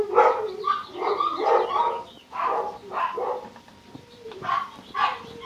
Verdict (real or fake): real